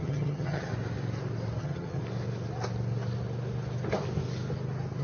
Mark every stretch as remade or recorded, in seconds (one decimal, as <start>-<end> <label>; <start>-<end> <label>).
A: 0.0-0.7 remade; 0.7-1.6 recorded; 1.6-2.0 remade; 2.0-5.0 recorded